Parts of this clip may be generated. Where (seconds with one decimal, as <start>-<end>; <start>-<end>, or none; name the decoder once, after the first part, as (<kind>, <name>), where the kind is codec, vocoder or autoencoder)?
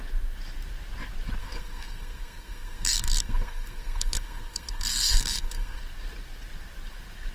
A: 1.4-5.8 (codec, SNAC)